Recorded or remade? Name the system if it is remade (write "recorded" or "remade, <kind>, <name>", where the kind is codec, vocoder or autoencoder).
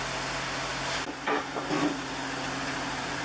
recorded